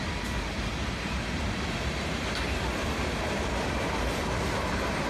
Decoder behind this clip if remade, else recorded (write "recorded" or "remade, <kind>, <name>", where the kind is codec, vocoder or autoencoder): recorded